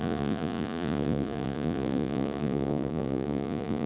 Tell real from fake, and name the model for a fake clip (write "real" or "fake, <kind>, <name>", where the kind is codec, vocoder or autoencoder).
fake, vocoder, Vocos